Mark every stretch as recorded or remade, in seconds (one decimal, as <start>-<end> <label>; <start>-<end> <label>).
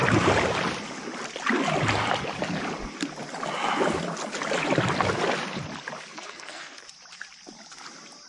0.0-6.1 recorded; 6.1-6.9 remade; 6.9-8.3 recorded